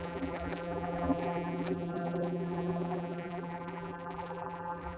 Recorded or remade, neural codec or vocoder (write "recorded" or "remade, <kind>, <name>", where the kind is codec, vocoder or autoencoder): remade, vocoder, BigVGAN v2